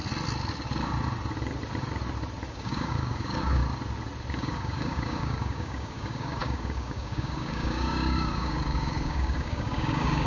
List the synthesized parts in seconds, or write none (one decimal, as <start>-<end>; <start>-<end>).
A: 2.5-3.6; 4.3-10.3